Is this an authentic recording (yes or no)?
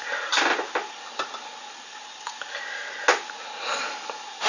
yes